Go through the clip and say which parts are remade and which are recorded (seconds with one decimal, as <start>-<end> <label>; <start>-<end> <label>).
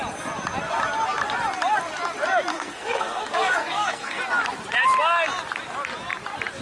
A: 0.0-2.5 recorded; 2.5-4.2 remade; 4.2-6.6 recorded